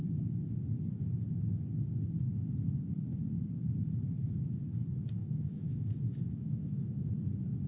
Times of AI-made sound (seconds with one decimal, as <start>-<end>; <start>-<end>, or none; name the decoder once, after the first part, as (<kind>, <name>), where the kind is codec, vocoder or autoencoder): 5.2-7.1 (autoencoder, DAC-VAE)